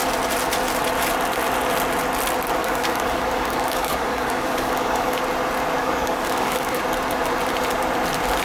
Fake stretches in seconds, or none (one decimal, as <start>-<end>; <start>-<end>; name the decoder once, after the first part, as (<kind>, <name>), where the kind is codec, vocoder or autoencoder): 2.6-5.2 (codec, DAC); 5.8-6.8